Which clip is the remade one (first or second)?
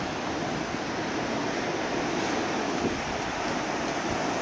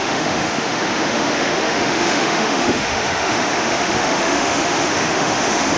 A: second